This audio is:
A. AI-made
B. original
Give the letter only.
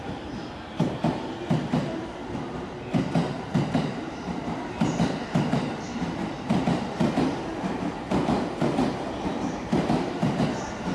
A